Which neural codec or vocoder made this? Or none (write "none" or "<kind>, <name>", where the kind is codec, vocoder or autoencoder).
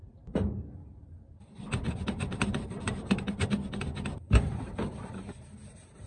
vocoder, BigVGAN v2